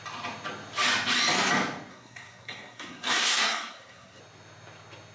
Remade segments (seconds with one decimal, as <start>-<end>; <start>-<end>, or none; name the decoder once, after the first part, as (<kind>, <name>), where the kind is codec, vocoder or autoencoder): 1.9-4.2 (codec, SNAC)